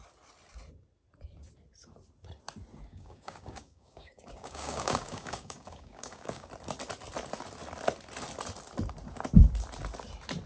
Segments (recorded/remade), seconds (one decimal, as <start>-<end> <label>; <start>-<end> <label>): 0.0-2.9 recorded; 2.9-6.5 remade; 6.5-10.5 recorded